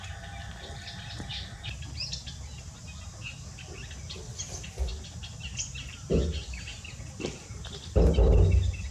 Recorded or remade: recorded